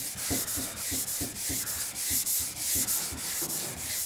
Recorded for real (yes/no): yes